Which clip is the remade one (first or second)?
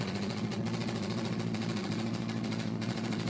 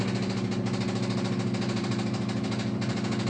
first